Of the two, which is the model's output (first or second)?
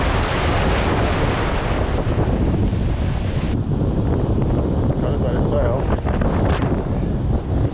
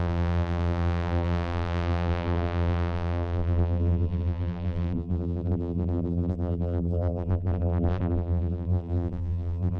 second